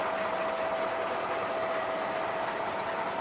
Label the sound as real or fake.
real